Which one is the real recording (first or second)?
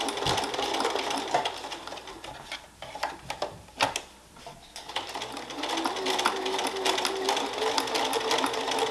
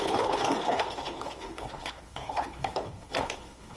first